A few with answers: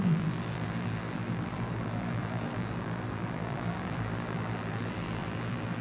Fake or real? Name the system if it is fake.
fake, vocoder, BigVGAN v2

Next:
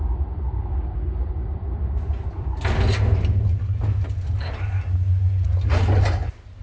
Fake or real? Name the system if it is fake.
real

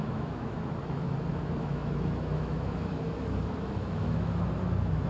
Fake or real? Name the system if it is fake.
fake, autoencoder, DAC-VAE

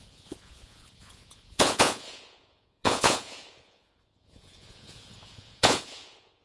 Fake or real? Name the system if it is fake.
fake, vocoder, Vocos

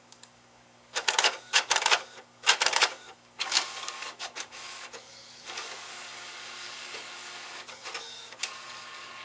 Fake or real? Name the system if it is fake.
fake, codec, DAC